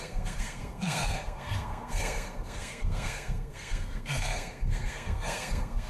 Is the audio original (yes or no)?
no